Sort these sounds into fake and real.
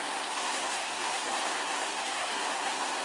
fake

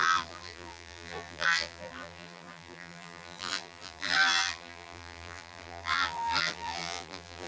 fake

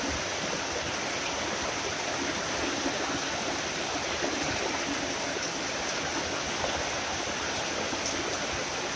real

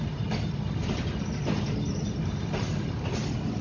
real